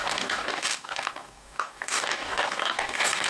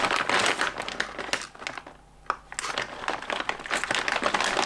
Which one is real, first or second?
second